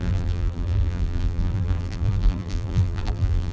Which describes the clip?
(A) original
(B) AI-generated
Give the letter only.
B